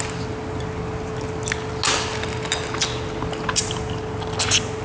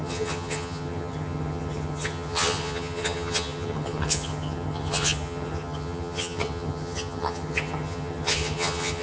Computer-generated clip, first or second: second